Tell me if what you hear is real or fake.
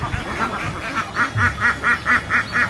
real